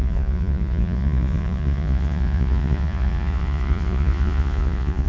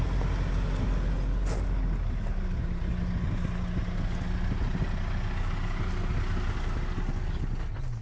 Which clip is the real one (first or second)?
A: second